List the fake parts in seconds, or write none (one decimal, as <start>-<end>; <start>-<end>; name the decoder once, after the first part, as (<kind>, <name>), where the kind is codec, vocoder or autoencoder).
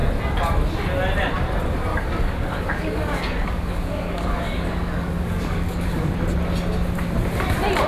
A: 1.9-6.1 (codec, DAC)